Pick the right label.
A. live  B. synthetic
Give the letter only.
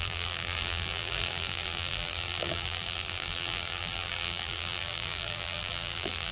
B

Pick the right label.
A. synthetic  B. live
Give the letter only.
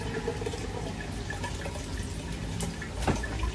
B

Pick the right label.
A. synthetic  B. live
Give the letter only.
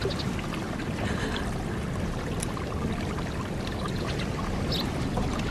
B